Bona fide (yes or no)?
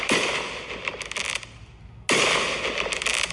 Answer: yes